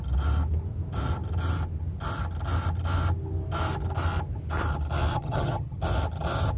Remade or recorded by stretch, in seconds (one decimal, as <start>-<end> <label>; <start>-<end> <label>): 0.0-5.1 recorded; 5.1-5.8 remade; 5.8-6.6 recorded